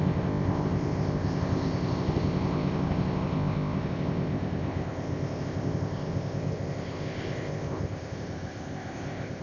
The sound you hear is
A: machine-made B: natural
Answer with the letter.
A